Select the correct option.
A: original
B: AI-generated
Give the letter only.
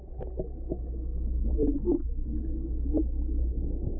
A